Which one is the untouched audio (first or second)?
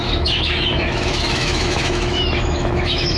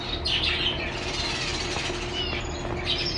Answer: second